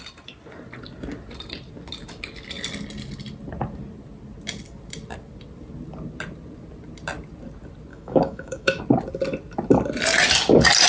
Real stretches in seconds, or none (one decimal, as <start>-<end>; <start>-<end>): 0.0-7.9; 8.8-10.9